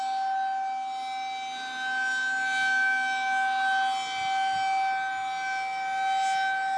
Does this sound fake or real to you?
real